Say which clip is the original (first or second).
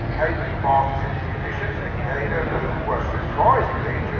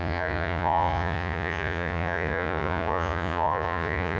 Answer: first